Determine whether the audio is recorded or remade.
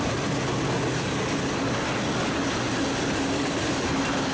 recorded